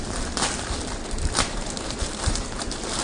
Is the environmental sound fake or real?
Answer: fake